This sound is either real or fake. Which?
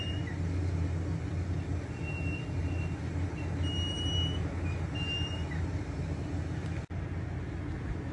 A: real